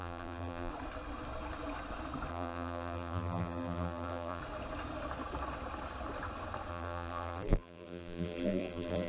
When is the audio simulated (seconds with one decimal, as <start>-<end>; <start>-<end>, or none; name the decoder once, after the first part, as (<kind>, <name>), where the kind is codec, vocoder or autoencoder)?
0.0-0.7 (vocoder, BigVGAN v2); 2.3-4.4; 6.7-9.1